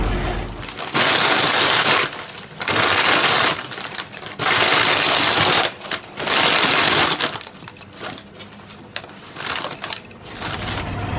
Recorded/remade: recorded